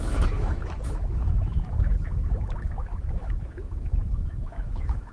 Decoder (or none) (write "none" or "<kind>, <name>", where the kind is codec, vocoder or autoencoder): autoencoder, DAC-VAE